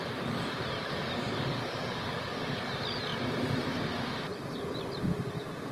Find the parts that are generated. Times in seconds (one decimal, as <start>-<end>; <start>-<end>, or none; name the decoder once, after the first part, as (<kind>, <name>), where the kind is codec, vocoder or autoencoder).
0.8-2.7 (codec, DAC)